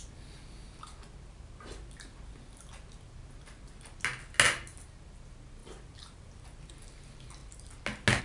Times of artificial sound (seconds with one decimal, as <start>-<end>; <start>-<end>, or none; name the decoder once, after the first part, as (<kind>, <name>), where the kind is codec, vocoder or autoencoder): 5.6-6.7 (vocoder, BigVGAN v2)

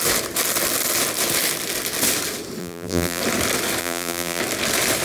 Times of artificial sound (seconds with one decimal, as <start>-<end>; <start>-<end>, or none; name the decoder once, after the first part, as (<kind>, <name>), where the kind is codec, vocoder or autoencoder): 2.6-3.2 (vocoder, BigVGAN v2); 3.8-4.4

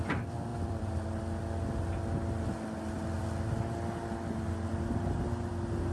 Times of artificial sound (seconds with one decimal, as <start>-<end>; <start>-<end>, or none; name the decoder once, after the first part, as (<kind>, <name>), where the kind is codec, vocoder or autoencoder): 0.5-1.2 (vocoder, BigVGAN v2)

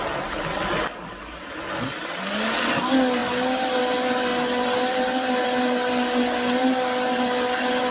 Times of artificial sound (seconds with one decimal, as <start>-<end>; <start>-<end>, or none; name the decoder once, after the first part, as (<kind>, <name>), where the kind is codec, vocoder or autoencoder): none

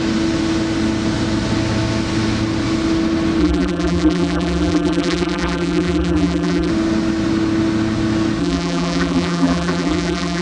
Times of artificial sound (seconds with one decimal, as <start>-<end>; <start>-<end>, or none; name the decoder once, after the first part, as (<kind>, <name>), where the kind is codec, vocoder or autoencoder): 3.4-6.7 (vocoder, BigVGAN v2); 8.4-10.4